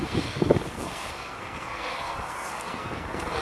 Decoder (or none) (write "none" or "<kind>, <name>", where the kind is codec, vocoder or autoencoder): codec, SNAC